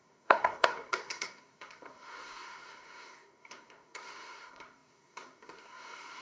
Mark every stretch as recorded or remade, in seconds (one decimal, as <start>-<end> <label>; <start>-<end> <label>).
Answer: 0.0-6.2 remade